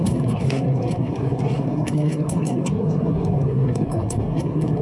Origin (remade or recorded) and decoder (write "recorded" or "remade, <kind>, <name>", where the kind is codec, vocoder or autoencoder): remade, codec, SNAC